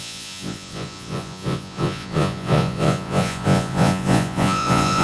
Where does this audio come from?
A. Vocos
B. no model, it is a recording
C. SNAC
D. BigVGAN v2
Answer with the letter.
A